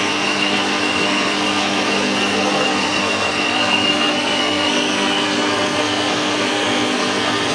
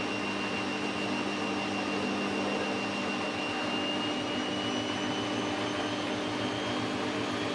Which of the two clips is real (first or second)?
second